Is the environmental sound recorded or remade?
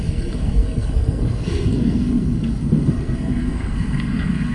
remade